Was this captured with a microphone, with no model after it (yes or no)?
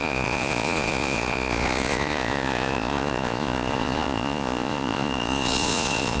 no